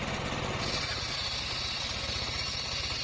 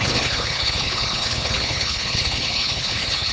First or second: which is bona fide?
first